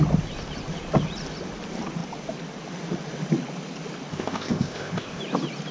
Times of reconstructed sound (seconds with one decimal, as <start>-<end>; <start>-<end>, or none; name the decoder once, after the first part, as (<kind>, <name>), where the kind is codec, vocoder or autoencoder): 4.1-5.2 (codec, ZipCodec)